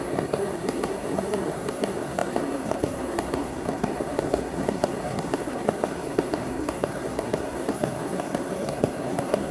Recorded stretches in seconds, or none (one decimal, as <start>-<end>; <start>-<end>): none